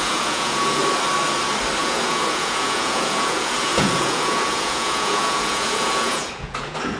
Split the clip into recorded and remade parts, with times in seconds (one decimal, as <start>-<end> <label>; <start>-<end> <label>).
0.0-0.8 remade; 0.8-1.8 recorded; 1.8-7.0 remade